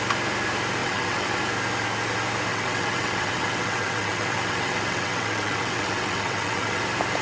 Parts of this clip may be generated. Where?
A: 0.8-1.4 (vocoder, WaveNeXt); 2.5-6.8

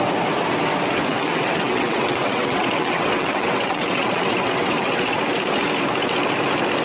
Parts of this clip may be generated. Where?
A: 1.1-5.2 (vocoder, WaveNeXt)

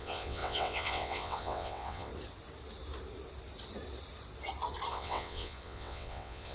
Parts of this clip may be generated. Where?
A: 0.0-2.1 (vocoder, WaveNeXt); 4.9-6.5